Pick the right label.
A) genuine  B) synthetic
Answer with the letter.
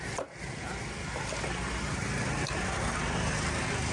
A